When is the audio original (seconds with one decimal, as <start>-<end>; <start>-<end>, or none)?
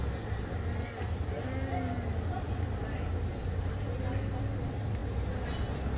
0.0-6.0